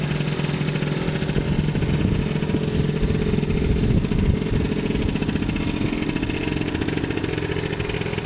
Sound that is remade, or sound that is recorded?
recorded